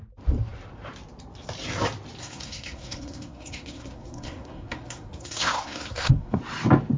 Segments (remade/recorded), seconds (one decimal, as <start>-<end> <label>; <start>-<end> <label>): 0.0-2.2 recorded; 2.2-6.4 remade; 6.4-7.0 recorded